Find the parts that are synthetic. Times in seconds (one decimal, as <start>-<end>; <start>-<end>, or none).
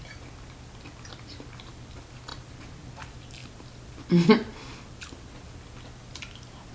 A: none